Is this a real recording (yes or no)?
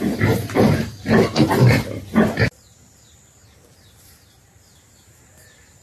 no